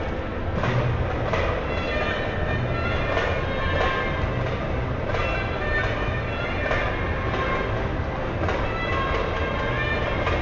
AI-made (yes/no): no